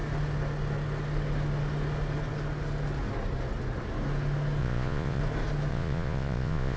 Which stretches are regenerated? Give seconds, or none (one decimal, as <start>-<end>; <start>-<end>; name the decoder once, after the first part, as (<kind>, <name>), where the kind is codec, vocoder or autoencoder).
4.6-5.2 (vocoder, Vocos); 5.7-6.8